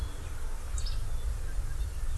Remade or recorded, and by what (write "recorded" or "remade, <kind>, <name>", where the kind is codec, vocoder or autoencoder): recorded